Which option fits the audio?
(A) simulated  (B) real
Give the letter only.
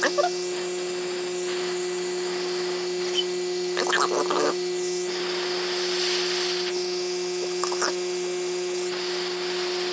B